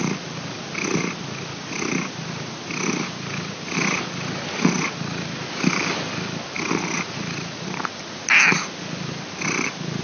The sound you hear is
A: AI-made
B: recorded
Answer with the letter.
B